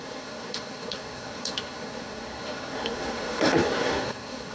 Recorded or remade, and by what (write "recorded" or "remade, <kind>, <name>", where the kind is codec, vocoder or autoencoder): remade, codec, SNAC